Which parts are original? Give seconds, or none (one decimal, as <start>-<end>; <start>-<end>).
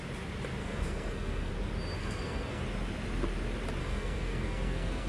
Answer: 0.0-0.6; 1.5-2.0; 2.6-3.8